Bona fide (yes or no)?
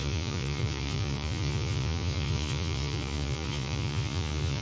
no